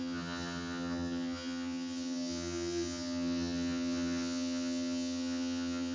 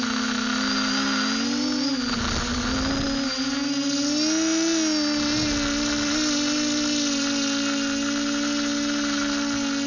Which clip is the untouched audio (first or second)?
second